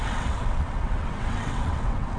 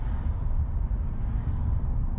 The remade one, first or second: first